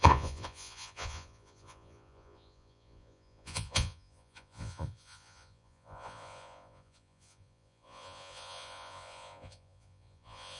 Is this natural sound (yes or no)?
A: no